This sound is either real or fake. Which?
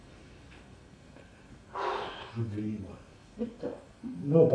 fake